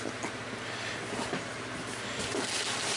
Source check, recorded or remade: recorded